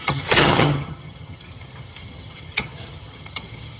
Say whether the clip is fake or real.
fake